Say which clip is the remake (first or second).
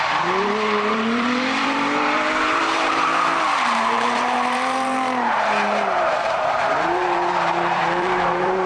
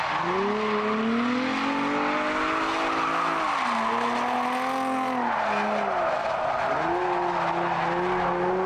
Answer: first